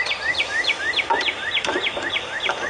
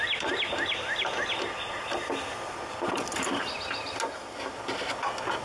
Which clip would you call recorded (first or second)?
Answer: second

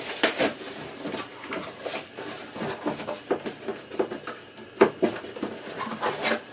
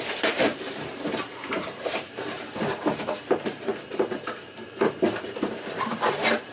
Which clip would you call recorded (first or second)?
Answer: first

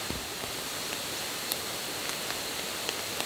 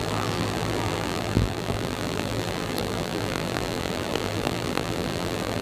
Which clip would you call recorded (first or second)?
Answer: first